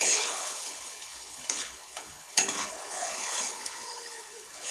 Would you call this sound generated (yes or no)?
yes